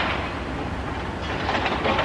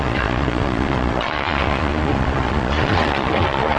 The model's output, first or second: second